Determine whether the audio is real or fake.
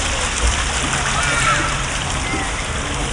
real